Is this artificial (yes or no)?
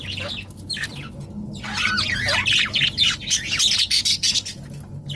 no